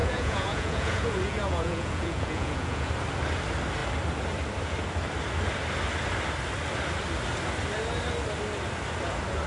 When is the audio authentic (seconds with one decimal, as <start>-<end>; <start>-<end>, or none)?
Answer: 2.9-9.5